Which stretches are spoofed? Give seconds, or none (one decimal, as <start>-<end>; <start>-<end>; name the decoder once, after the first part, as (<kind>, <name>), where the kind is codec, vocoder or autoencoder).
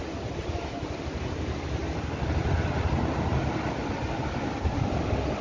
none